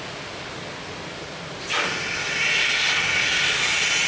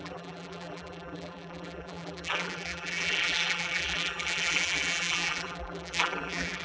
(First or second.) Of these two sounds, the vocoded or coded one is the second